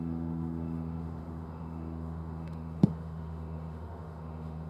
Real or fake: fake